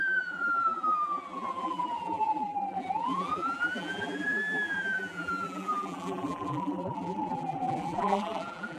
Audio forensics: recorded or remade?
remade